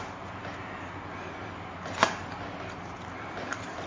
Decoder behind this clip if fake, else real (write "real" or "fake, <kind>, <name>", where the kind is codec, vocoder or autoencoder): real